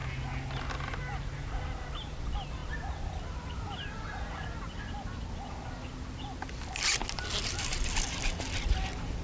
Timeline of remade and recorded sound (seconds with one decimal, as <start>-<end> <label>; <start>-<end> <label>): 0.0-9.2 recorded